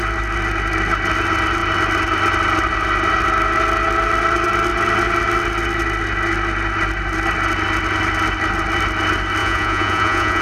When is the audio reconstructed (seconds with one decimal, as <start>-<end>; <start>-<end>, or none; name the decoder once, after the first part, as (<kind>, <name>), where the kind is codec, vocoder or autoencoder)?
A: 9.4-10.4 (vocoder, Vocos)